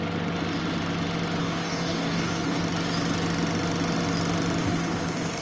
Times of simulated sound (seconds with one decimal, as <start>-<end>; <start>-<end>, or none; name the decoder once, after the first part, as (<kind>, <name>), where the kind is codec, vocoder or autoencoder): 1.4-2.6 (codec, DAC); 4.6-5.4

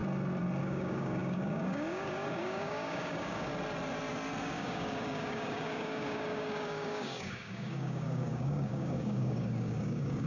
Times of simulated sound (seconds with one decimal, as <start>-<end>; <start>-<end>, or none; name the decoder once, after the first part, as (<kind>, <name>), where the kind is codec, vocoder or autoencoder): 0.6-3.5 (codec, DAC); 4.4-10.3

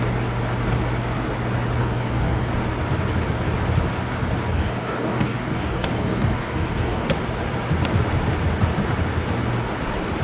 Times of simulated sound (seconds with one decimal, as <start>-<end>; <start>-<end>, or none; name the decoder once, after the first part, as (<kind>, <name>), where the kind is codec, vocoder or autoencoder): 1.8-2.5 (codec, DAC); 4.5-7.1